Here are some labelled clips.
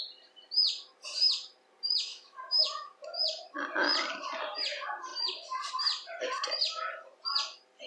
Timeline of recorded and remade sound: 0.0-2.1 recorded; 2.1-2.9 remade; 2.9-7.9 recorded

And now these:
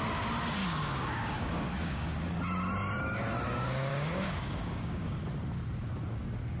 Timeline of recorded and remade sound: 0.0-0.6 recorded; 0.6-2.1 remade; 2.1-3.9 recorded; 3.9-5.2 remade; 5.2-6.6 recorded

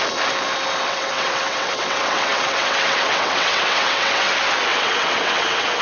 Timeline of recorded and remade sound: 0.0-0.8 recorded; 0.8-4.3 remade; 4.3-4.7 recorded; 4.7-5.8 remade